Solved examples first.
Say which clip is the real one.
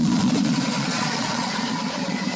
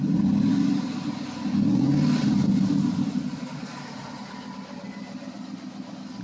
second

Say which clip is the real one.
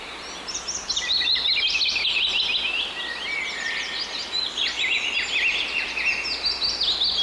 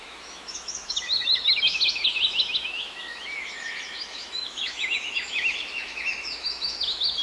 first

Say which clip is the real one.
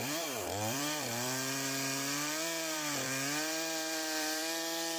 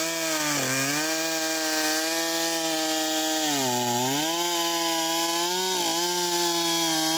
second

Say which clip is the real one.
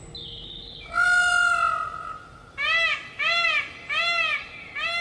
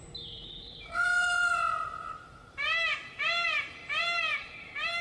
first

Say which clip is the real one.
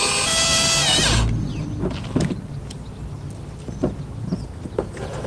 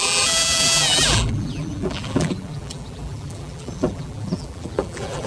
first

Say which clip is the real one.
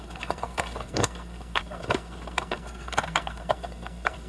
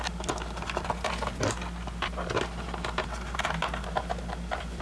second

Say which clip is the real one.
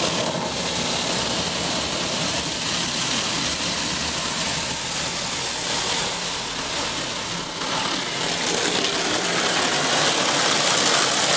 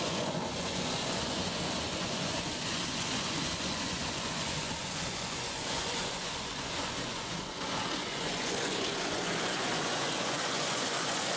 first